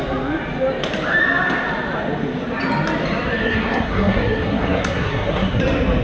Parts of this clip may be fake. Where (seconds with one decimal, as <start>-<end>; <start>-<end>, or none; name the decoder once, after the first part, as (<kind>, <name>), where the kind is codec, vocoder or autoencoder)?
3.4-5.6 (codec, SNAC)